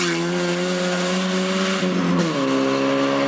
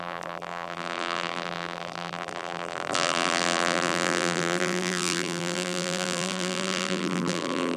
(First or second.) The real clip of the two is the first